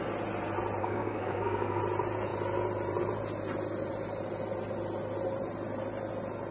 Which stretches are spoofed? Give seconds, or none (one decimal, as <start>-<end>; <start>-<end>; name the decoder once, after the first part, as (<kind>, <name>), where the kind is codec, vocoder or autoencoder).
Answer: 0.8-1.8 (codec, SNAC)